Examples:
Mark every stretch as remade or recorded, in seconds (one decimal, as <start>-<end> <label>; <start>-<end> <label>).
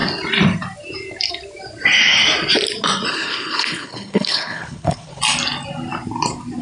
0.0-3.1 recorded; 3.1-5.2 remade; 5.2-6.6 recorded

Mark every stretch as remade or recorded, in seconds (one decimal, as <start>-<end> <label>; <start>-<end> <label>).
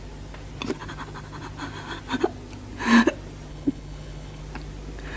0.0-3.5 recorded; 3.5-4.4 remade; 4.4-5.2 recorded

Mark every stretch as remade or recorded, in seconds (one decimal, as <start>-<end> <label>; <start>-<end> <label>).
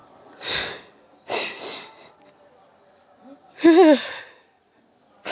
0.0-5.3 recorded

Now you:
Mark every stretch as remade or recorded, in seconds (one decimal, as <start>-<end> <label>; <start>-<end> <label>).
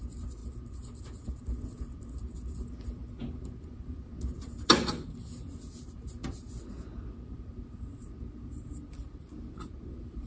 0.0-10.3 recorded